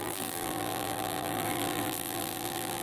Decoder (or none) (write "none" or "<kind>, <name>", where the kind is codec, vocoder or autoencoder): vocoder, BigVGAN v2